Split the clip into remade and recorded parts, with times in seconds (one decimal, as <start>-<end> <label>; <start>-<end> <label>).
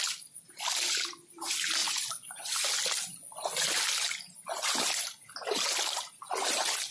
0.0-6.9 recorded